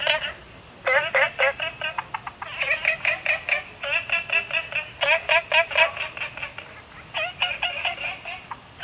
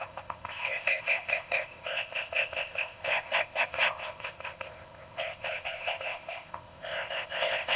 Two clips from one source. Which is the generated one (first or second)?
second